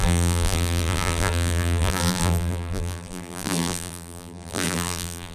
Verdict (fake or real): fake